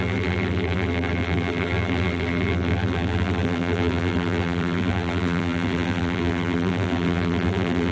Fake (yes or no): yes